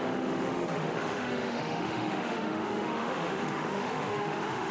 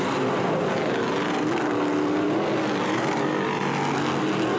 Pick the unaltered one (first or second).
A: second